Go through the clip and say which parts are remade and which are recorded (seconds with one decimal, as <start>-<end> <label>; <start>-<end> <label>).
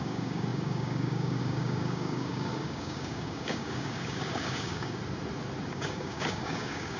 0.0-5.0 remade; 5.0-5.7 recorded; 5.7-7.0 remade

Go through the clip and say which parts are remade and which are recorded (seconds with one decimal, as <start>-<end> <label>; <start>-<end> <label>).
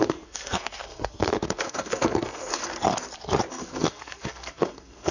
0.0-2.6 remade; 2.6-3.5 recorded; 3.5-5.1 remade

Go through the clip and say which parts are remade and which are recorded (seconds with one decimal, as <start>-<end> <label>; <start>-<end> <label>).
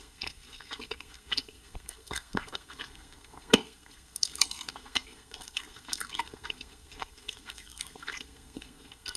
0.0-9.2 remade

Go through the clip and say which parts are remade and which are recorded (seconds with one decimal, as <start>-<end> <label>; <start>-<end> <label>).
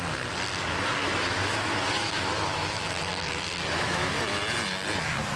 0.0-1.0 recorded; 1.0-4.2 remade; 4.2-5.4 recorded